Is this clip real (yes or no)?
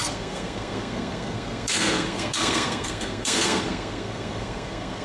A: no